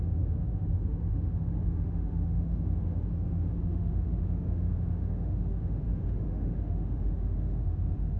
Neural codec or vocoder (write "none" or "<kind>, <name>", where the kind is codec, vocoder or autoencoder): autoencoder, DAC-VAE